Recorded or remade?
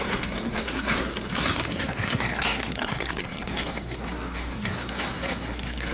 remade